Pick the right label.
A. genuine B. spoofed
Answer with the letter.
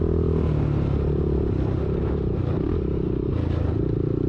A